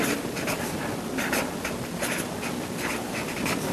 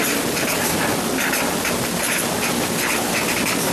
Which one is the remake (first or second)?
first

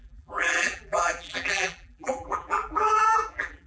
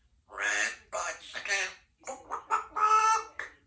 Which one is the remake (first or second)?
first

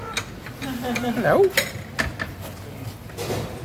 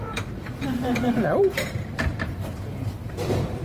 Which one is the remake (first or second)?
second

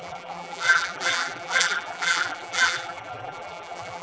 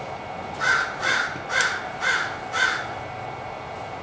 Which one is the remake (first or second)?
first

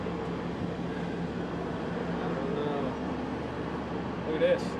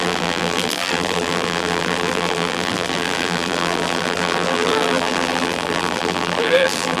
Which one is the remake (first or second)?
second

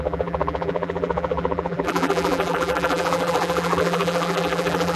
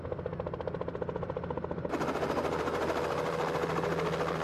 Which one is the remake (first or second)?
first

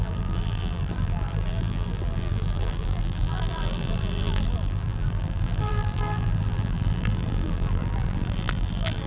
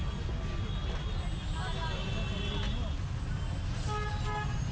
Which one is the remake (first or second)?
first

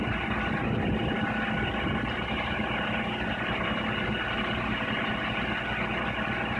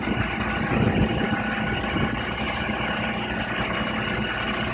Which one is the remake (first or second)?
second